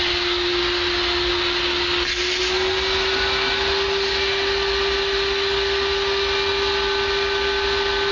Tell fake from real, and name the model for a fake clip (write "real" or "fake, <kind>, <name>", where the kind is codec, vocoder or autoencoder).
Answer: real